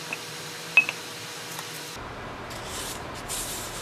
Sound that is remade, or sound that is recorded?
recorded